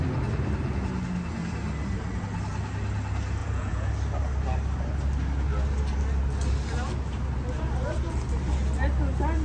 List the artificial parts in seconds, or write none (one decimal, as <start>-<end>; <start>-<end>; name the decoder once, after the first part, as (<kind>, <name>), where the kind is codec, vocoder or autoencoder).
3.4-3.9 (vocoder, Vocos)